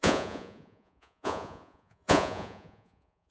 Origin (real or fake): fake